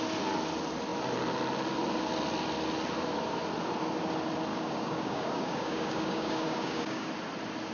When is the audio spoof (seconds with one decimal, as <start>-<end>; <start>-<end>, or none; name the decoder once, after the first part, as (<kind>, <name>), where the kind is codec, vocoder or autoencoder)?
4.5-7.1 (codec, DAC)

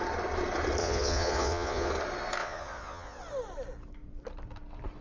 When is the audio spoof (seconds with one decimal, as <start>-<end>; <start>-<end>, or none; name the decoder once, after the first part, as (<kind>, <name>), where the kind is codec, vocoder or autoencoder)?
0.8-1.9 (vocoder, Vocos); 2.4-3.2

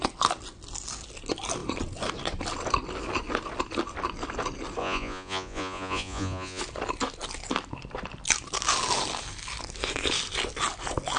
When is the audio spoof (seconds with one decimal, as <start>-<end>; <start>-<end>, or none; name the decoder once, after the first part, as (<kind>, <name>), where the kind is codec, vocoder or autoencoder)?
4.8-6.6 (vocoder, Vocos)

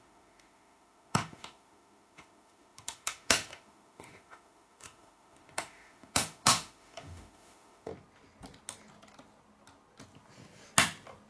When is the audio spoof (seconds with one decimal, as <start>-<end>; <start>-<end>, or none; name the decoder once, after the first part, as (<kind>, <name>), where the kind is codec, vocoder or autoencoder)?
0.0-7.9 (autoencoder, DAC-VAE)